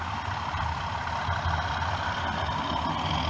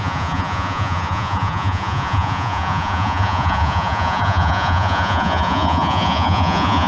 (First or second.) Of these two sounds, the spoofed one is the second